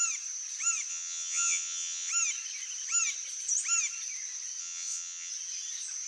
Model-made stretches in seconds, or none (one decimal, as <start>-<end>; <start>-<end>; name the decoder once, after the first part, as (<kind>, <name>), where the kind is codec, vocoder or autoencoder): 0.9-2.1 (vocoder, WaveNeXt); 4.6-5.3